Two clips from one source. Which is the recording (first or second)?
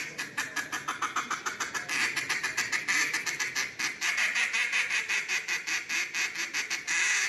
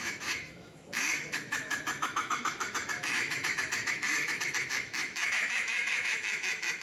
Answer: first